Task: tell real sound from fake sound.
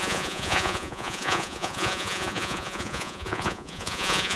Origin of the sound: fake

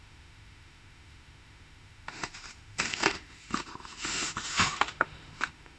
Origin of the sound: fake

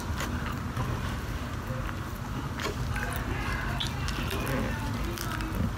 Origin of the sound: real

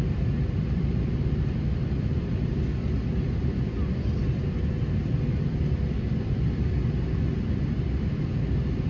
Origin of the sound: fake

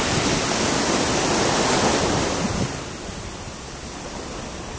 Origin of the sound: real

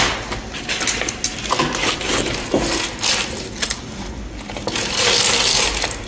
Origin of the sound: real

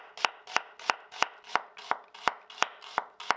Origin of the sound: real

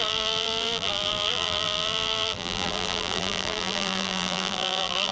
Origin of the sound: fake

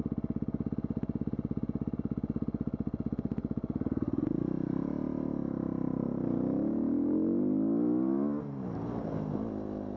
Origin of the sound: real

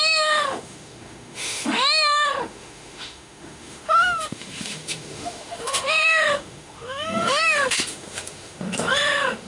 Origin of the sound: fake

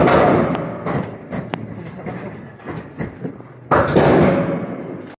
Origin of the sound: real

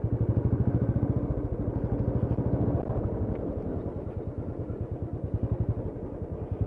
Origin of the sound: real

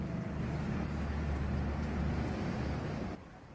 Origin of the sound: real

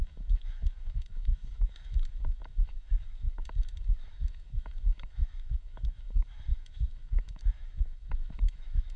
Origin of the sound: fake